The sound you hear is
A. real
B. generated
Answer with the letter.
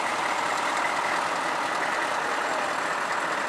A